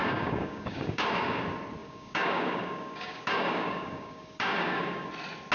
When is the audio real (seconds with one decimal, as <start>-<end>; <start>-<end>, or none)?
1.4-1.8; 5.1-5.5